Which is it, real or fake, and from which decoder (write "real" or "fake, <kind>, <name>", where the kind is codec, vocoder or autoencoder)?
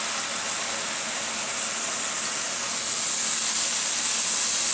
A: real